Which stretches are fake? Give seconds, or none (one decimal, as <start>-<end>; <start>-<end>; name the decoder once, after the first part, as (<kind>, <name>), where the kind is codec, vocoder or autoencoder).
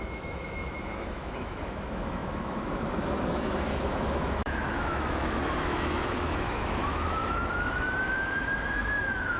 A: 0.0-9.4 (autoencoder, DAC-VAE)